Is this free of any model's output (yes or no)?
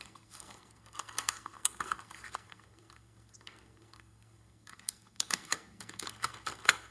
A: no